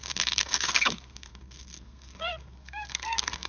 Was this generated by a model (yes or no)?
yes